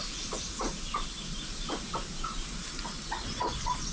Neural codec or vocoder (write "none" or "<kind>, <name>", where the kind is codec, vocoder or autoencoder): none